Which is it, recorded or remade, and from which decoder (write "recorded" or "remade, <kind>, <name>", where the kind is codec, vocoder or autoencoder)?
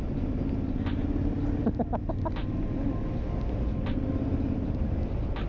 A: recorded